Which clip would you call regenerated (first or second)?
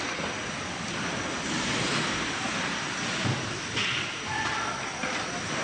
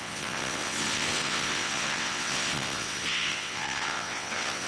second